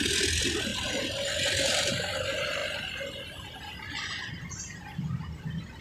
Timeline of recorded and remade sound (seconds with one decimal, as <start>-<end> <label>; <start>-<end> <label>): 0.0-0.7 recorded; 0.7-1.9 remade; 1.9-5.8 recorded